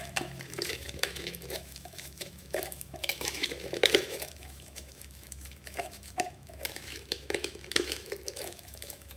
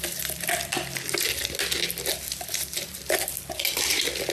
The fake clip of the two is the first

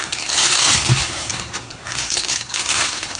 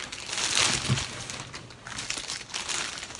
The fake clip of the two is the first